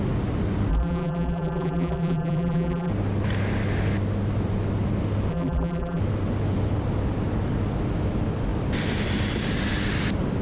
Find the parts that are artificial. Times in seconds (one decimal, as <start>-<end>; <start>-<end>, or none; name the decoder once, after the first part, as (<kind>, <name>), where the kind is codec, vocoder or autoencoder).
0.7-2.9 (vocoder, BigVGAN v2); 5.3-6.0